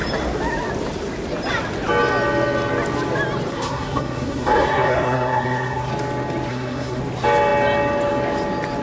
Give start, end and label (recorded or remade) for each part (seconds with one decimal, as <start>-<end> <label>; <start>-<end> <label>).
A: 0.0-3.5 recorded; 3.5-5.9 remade; 5.9-6.5 recorded; 6.5-7.0 remade; 7.0-8.8 recorded